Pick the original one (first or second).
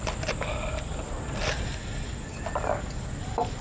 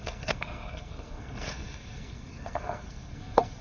first